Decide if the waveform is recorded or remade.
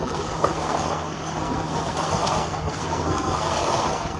remade